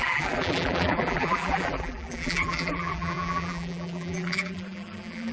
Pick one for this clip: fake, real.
fake